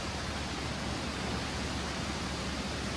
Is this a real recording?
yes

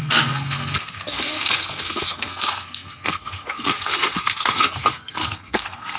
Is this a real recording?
no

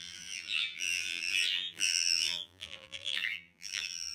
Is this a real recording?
no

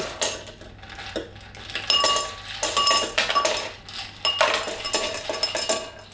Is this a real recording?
yes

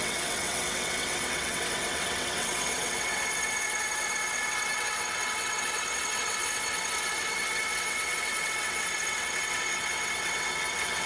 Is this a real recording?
no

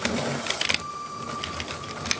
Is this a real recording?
yes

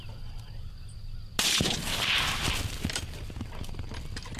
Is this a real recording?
yes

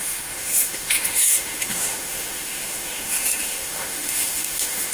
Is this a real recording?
no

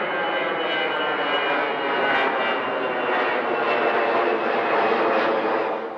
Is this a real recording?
yes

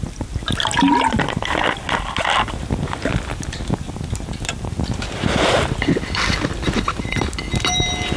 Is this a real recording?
yes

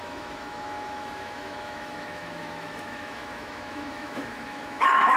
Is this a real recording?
no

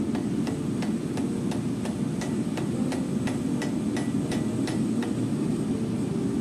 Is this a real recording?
yes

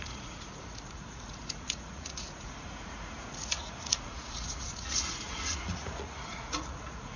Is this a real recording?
no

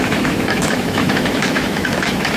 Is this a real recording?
no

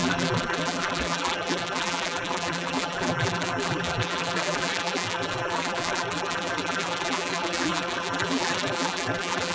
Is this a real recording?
no